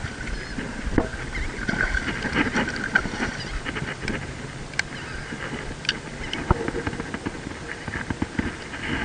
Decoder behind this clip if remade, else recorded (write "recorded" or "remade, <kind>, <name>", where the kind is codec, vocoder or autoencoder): recorded